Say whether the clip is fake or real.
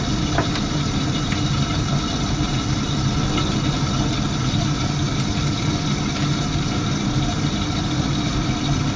real